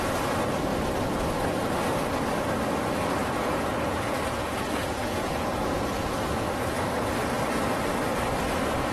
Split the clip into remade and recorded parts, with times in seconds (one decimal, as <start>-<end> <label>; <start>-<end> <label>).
0.0-3.2 recorded; 3.2-6.5 remade; 6.5-8.9 recorded